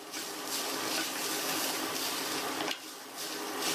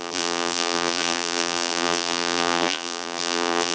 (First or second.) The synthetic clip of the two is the second